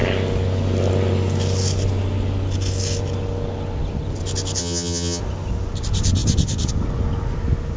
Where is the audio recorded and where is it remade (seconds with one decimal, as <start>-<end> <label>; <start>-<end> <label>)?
0.0-4.6 recorded; 4.6-5.2 remade; 5.2-7.8 recorded